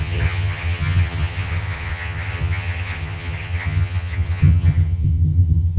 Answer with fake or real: fake